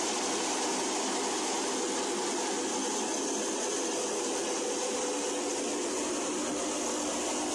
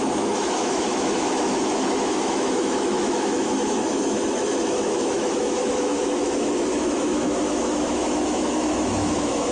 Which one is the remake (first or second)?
second